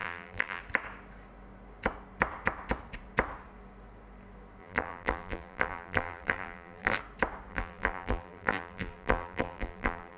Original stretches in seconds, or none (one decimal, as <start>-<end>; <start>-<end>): 0.6-4.6; 7.0-7.5